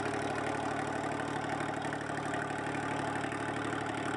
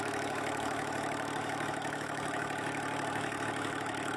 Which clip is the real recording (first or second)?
first